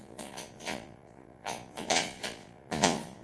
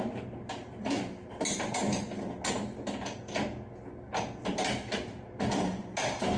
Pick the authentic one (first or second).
second